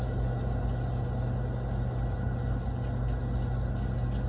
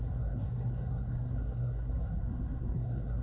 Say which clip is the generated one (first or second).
second